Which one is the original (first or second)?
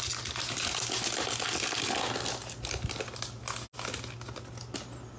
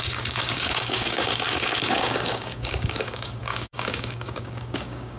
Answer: first